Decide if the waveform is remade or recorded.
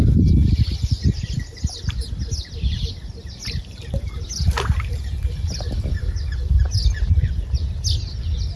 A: recorded